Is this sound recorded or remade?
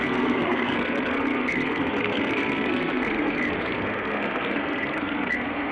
remade